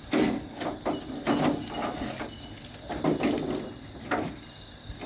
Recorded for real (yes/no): yes